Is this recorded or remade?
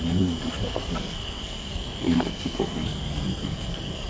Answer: remade